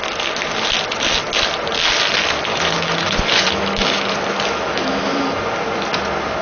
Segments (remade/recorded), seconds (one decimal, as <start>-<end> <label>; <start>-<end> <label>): 0.0-2.5 recorded; 2.5-5.2 remade; 5.2-6.4 recorded